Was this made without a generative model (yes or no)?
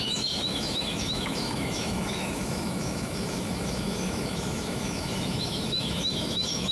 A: no